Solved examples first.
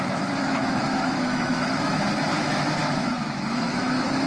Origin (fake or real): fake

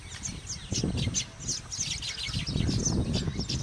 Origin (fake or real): real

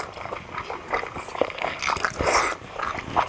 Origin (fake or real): real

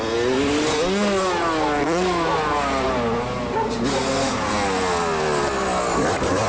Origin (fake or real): real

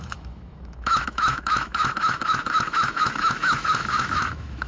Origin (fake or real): fake